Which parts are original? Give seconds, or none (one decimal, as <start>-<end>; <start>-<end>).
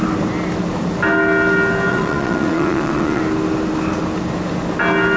0.0-1.9; 3.2-5.2